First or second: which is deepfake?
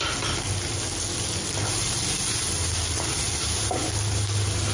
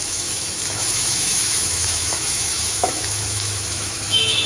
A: second